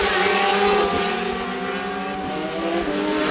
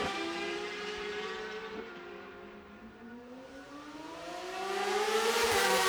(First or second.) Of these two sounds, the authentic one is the first